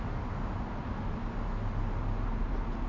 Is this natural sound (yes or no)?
yes